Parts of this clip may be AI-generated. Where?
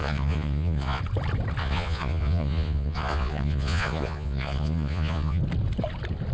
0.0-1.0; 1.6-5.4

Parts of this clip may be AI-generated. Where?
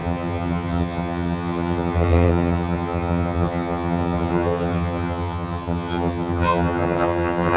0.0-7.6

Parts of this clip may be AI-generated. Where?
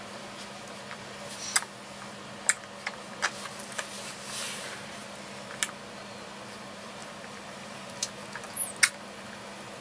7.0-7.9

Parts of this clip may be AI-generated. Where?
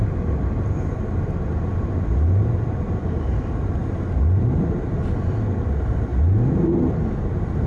none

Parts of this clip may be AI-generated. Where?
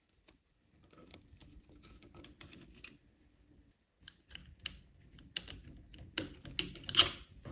none